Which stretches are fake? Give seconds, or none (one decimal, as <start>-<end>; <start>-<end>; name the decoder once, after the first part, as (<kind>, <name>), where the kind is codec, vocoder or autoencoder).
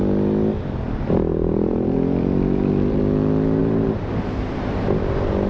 1.3-3.0 (vocoder, BigVGAN v2); 3.6-4.8